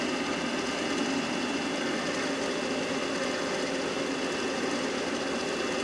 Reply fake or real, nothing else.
real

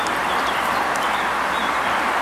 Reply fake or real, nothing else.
real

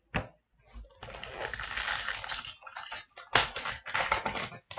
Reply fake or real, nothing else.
real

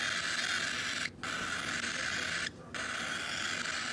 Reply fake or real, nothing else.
real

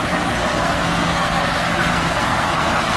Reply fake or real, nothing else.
fake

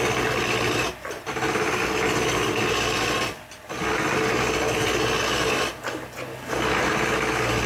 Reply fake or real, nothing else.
real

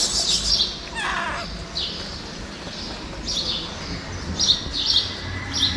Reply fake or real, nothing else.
real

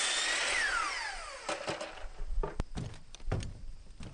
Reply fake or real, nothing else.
real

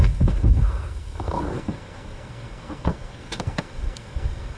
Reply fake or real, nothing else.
fake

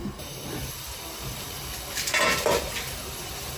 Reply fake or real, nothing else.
real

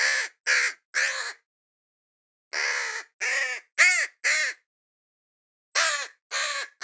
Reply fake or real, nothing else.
real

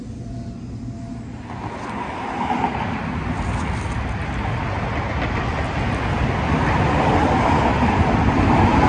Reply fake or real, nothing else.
real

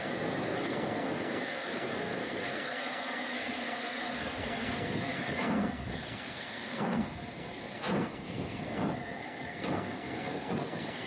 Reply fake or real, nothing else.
fake